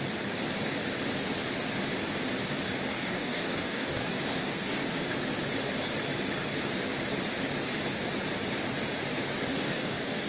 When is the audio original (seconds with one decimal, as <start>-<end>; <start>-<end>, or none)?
0.0-2.9; 5.0-9.5